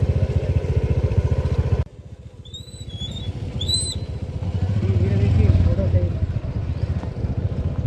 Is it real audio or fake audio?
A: real